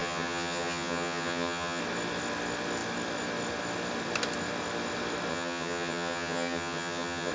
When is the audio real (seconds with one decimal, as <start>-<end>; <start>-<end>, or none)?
1.8-5.3